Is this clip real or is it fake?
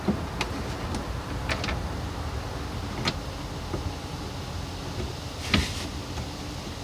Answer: real